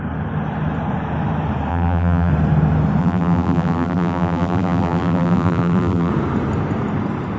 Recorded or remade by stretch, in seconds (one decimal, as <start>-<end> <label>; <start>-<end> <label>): 0.0-1.7 recorded; 1.7-2.3 remade; 2.3-3.0 recorded; 3.0-6.1 remade; 6.1-7.4 recorded